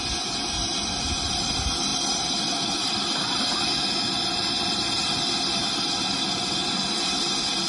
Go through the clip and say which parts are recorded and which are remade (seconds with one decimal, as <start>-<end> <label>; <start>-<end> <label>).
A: 0.0-7.7 recorded